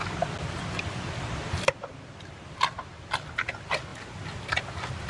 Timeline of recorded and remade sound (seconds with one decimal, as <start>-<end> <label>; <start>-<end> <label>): 0.0-5.1 recorded